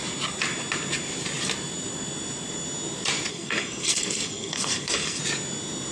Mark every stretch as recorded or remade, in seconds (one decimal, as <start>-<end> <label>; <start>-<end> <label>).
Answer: 0.0-3.3 recorded; 3.3-5.2 remade; 5.2-5.9 recorded